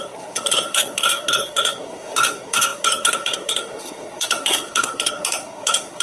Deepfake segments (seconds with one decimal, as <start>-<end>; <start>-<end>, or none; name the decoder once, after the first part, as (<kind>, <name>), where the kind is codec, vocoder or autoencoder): 0.0-6.0 (codec, SNAC)